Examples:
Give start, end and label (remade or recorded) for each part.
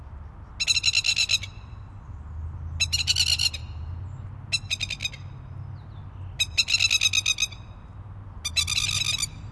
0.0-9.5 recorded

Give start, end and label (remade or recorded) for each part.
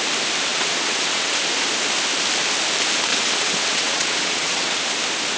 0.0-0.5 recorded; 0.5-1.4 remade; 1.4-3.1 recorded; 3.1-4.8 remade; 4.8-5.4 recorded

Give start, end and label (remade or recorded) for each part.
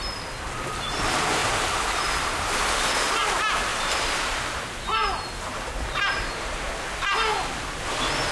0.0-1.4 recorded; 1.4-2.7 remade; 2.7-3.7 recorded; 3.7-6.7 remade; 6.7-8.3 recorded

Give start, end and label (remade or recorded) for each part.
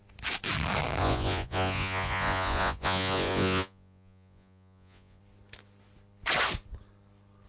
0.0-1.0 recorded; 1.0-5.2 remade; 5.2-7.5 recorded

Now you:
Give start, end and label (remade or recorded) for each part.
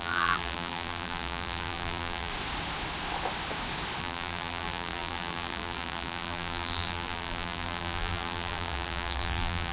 0.0-2.3 remade; 2.3-4.0 recorded; 4.0-9.7 remade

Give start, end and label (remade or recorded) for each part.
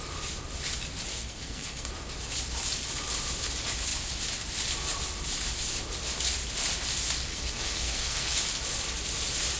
0.0-1.1 recorded; 1.1-1.9 remade; 1.9-7.3 recorded; 7.3-8.4 remade; 8.4-9.6 recorded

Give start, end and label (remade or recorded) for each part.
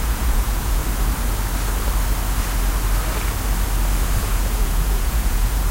0.0-0.8 remade; 0.8-4.2 recorded; 4.2-5.7 remade